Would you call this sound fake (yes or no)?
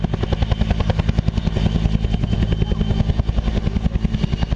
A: no